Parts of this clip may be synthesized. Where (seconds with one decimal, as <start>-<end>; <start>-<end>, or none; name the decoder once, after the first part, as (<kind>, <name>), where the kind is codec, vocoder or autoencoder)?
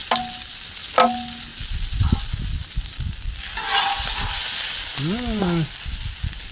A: none